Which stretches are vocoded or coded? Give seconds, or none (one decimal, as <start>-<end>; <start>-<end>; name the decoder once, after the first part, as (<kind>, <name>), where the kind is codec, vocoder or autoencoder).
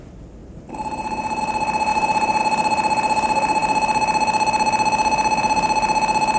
0.4-1.4 (vocoder, BigVGAN v2); 1.9-2.4